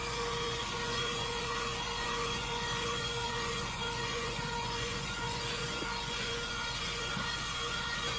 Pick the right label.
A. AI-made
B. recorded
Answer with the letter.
A